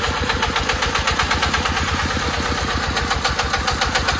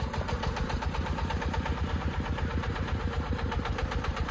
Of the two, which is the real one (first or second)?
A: first